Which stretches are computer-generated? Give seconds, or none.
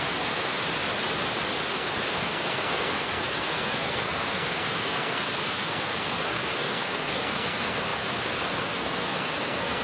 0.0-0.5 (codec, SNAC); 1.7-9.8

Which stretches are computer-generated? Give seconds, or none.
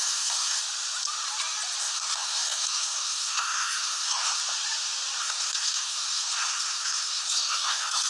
0.0-0.6 (codec, SNAC); 1.8-4.4; 5.2-8.1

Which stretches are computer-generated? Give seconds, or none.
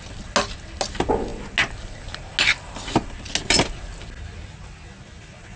none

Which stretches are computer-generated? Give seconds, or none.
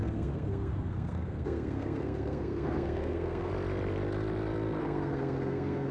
0.0-3.5 (codec, SNAC); 4.8-5.9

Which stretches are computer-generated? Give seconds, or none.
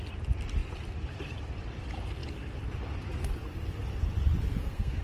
4.5-5.0 (codec, SNAC)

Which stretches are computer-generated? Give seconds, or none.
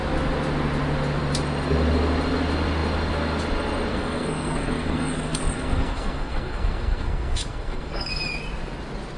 3.9-8.1 (codec, SNAC)